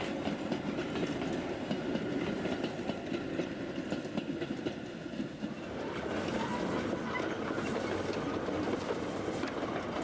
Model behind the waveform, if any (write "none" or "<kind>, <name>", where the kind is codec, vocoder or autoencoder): none